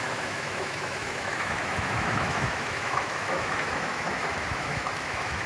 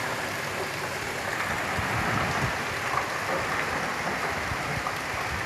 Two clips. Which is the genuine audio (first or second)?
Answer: second